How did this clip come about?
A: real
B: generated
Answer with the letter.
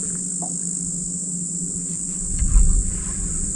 A